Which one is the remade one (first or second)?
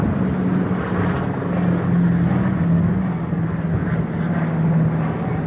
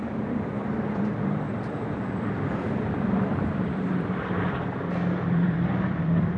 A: second